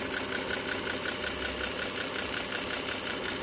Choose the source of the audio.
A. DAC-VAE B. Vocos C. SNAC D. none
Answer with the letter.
D